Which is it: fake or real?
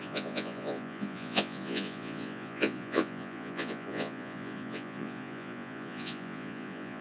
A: fake